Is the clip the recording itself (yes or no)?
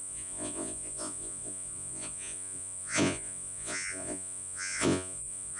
no